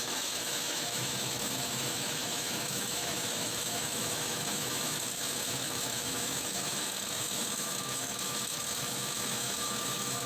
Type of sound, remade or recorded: remade